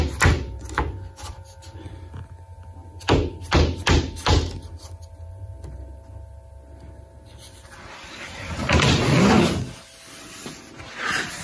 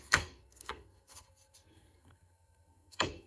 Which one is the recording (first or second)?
first